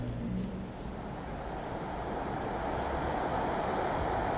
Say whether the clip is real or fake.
real